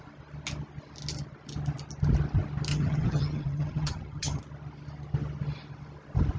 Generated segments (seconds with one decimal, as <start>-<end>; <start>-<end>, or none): 2.7-4.4